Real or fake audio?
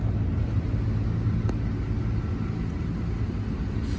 real